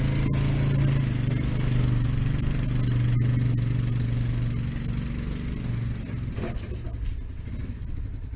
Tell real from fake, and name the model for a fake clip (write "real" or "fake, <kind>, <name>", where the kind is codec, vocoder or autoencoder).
real